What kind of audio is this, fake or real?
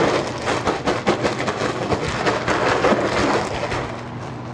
real